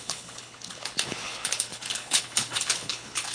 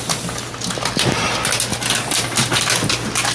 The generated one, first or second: first